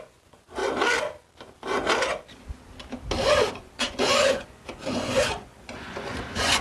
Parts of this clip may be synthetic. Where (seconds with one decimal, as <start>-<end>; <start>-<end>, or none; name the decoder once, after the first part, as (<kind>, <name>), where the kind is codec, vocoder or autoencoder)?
0.0-0.6 (vocoder, Vocos); 3.5-6.6